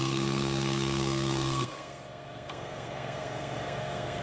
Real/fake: fake